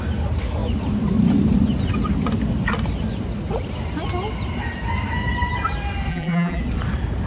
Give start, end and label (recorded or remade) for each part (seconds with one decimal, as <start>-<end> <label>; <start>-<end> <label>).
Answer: 0.0-6.1 recorded; 6.1-6.6 remade; 6.6-7.3 recorded